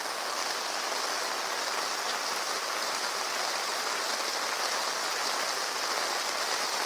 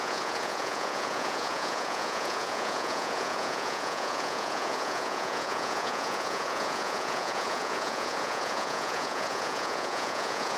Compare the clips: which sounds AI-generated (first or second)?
second